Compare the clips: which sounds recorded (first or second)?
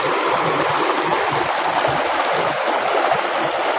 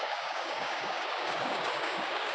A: first